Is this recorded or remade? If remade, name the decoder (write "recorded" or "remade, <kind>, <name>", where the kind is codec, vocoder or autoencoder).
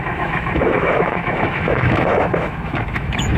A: remade, autoencoder, DAC-VAE